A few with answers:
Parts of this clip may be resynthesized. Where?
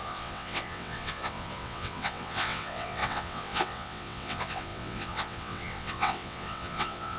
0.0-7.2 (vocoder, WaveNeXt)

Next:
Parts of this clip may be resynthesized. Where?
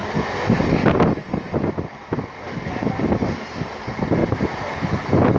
none